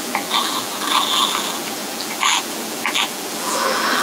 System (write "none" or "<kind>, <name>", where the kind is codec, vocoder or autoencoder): vocoder, BigVGAN v2